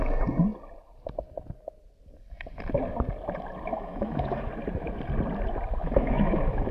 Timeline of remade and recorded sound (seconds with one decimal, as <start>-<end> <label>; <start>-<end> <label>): 0.0-3.7 recorded; 3.7-4.5 remade; 4.5-5.8 recorded; 5.8-6.7 remade